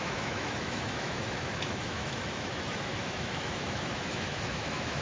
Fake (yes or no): yes